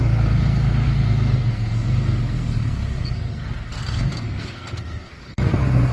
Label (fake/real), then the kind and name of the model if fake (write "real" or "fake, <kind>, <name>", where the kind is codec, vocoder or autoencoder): fake, codec, SNAC